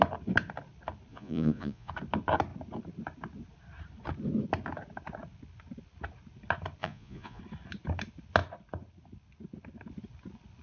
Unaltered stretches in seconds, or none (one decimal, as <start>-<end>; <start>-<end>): 0.0-1.1; 1.9-6.8; 7.4-10.6